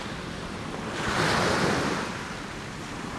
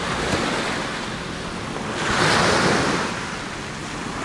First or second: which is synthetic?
first